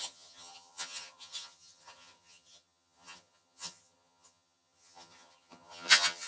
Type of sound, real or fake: fake